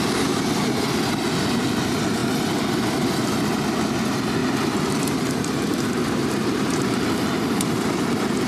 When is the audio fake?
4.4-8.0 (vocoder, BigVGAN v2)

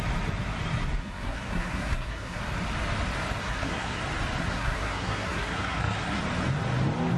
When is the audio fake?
1.0-2.4 (codec, SNAC); 3.4-4.0; 4.4-6.2

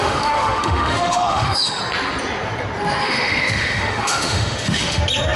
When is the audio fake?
0.0-1.8 (autoencoder, DAC-VAE); 3.0-5.0

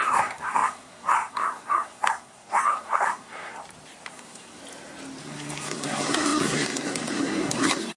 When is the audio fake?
0.0-3.6 (codec, SNAC); 4.1-4.6; 5.2-8.0

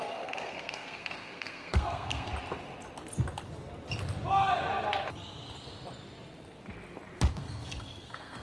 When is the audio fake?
0.0-2.3 (codec, SNAC); 7.3-8.4